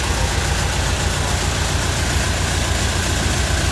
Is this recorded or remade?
recorded